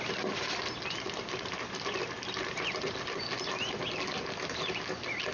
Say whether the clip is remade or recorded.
recorded